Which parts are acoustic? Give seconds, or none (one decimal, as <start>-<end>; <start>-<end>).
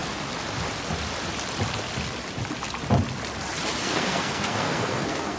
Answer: 0.0-3.8